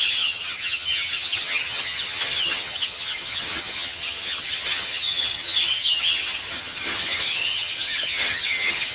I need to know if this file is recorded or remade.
remade